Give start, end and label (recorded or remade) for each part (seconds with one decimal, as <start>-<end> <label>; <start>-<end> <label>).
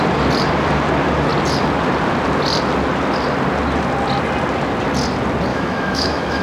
0.0-5.5 recorded; 5.5-6.4 remade